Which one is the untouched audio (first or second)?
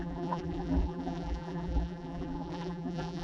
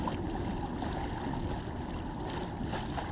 second